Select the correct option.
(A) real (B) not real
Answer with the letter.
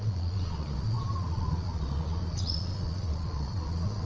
B